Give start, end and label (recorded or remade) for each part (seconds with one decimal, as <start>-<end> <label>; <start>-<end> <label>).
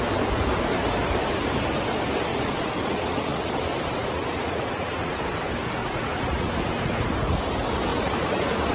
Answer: 0.0-2.3 recorded; 2.3-3.5 remade; 3.5-4.0 recorded; 4.0-5.2 remade; 5.2-5.8 recorded; 5.8-6.5 remade; 6.5-7.9 recorded; 7.9-8.7 remade